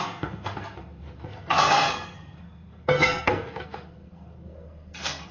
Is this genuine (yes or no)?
no